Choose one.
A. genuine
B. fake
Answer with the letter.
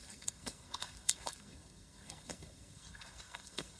B